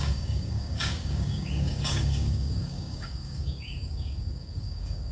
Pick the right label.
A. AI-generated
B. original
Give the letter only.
A